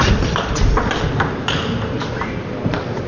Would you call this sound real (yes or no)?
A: yes